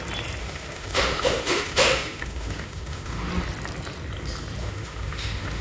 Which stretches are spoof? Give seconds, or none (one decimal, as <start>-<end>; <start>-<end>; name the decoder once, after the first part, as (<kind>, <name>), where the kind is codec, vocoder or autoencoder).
0.4-3.3 (autoencoder, DAC-VAE); 4.6-5.6